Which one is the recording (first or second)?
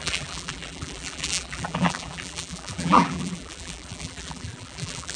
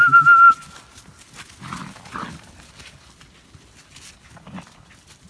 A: second